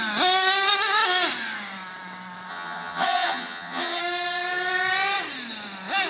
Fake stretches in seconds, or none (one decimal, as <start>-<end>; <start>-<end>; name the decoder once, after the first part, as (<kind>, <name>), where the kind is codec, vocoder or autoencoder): 2.5-4.0 (vocoder, HiFi-GAN)